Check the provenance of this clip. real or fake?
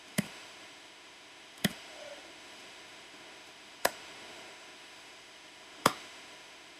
fake